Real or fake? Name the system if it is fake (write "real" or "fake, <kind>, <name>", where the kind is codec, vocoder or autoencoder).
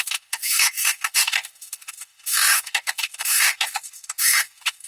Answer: fake, autoencoder, DAC-VAE